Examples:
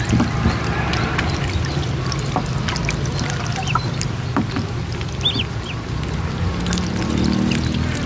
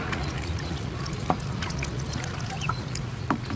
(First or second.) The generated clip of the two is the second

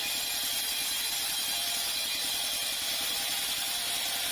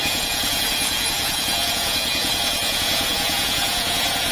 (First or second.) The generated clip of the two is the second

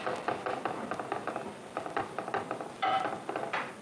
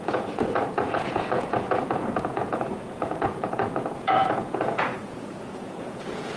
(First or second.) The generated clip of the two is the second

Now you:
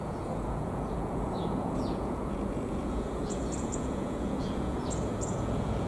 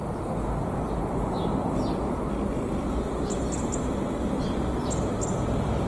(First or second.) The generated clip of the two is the first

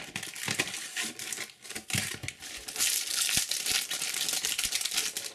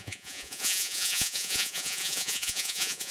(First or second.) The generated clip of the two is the second